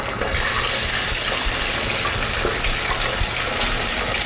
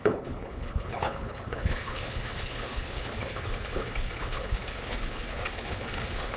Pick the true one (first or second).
first